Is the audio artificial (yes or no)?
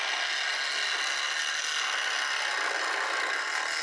no